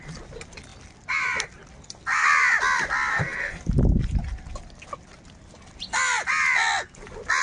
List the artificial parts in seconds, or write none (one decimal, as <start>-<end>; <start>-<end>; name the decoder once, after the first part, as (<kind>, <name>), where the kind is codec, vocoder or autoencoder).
3.1-3.6 (codec, SNAC)